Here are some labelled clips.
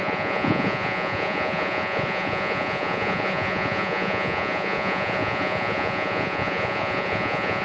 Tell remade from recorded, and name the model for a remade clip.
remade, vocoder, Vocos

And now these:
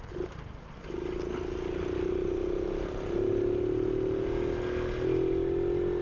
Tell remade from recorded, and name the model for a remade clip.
recorded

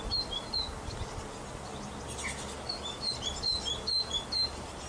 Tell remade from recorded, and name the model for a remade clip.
recorded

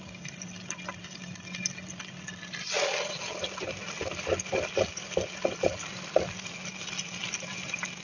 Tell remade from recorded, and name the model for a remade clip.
recorded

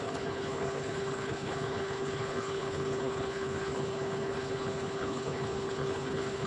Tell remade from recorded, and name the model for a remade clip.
remade, codec, HILCodec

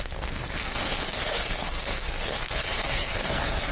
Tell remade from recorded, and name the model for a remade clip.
remade, codec, SNAC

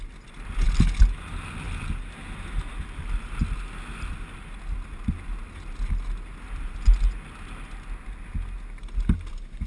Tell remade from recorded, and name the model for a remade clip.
recorded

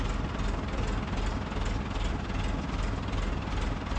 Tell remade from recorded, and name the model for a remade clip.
recorded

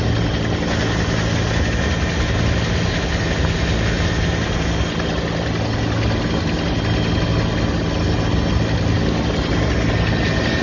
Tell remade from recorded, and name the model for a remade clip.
recorded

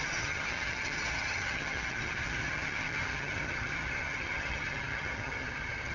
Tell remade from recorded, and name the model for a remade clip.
remade, vocoder, HiFi-GAN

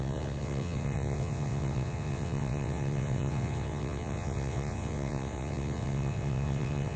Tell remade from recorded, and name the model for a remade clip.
remade, vocoder, WaveNeXt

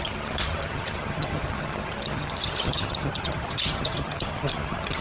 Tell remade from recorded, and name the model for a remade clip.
remade, vocoder, HiFi-GAN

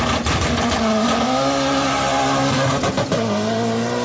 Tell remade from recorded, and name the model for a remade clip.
recorded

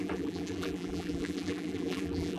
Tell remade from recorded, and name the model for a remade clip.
remade, vocoder, BigVGAN v2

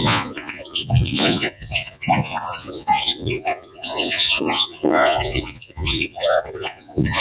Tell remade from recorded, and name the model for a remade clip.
remade, vocoder, Vocos